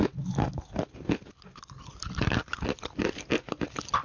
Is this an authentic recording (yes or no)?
yes